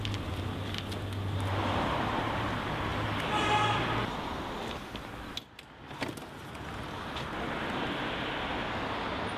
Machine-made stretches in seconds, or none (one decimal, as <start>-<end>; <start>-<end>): none